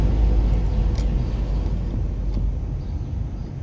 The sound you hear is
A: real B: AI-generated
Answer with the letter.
A